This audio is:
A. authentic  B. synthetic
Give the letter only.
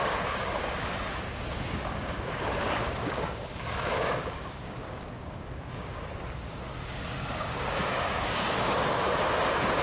B